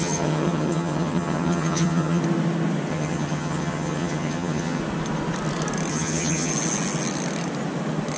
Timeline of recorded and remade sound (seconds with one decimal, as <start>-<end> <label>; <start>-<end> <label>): 0.0-2.2 remade; 2.2-2.9 recorded; 2.9-4.8 remade; 4.8-5.9 recorded; 5.9-6.5 remade; 6.5-8.2 recorded

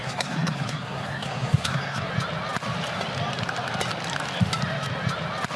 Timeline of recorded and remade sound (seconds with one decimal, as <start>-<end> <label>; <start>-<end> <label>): 0.0-2.1 remade; 2.1-5.6 recorded

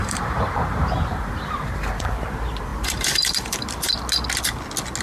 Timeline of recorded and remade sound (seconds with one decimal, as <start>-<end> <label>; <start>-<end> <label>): 0.0-1.9 remade; 1.9-2.7 recorded; 2.7-3.9 remade; 3.9-5.0 recorded

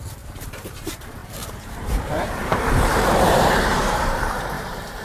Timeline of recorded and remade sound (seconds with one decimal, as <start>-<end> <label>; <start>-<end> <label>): 0.0-5.0 remade

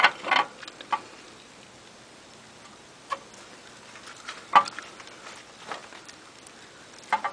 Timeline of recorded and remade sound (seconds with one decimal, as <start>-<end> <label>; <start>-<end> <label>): 0.0-5.8 recorded; 5.8-6.5 remade; 6.5-7.3 recorded